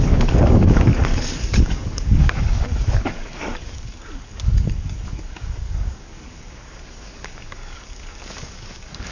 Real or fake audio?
fake